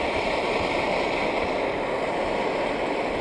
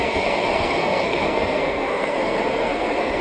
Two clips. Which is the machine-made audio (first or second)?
second